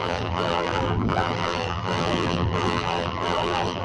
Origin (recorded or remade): remade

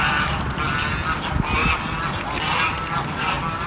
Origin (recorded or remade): recorded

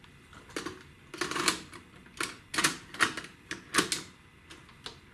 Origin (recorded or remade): recorded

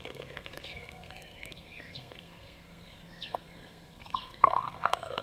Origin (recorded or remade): remade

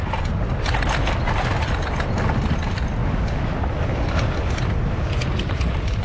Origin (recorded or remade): recorded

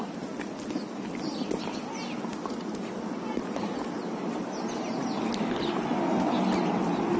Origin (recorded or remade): recorded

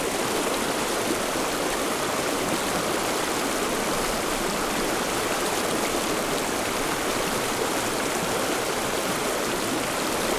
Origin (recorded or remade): recorded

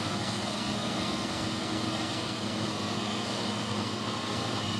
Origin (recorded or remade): remade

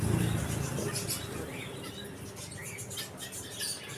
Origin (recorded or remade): recorded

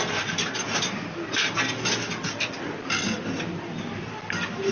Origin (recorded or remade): recorded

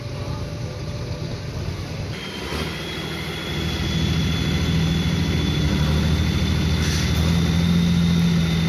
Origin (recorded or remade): recorded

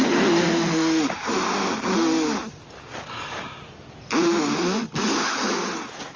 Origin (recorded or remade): recorded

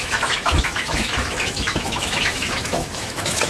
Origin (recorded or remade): remade